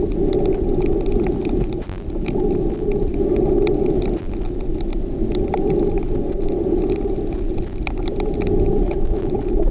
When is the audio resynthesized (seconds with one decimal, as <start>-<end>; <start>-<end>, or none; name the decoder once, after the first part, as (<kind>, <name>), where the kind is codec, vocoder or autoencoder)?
4.7-6.6 (vocoder, BigVGAN v2)